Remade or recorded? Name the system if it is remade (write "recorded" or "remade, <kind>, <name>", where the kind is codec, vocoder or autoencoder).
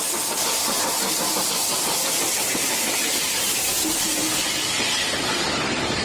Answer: recorded